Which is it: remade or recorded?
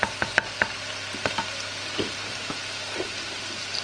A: recorded